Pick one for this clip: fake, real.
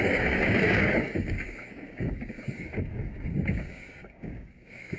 fake